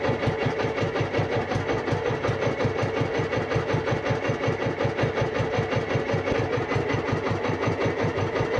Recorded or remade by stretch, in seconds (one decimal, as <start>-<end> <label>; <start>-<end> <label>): 0.0-8.6 recorded